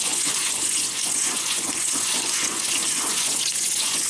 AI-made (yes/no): yes